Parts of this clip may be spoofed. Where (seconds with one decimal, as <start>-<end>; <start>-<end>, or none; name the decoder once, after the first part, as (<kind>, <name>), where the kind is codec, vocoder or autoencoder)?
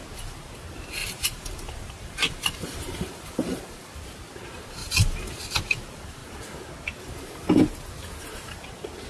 1.0-3.6 (vocoder, BigVGAN v2); 4.8-5.4